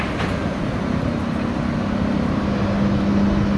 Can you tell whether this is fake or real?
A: real